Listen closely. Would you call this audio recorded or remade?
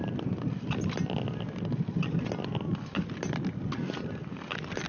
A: recorded